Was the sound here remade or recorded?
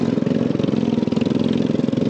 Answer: recorded